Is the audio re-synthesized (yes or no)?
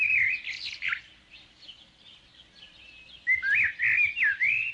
no